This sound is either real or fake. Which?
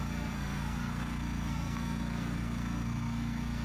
fake